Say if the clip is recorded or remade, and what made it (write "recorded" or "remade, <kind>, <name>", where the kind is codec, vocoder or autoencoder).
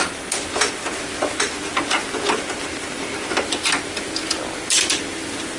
recorded